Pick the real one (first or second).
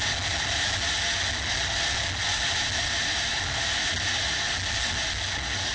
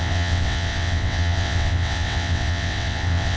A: first